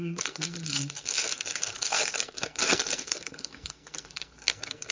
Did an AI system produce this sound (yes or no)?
yes